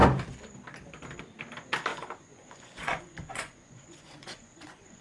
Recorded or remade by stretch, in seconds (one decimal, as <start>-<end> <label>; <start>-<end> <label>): 0.0-1.9 recorded; 1.9-5.0 remade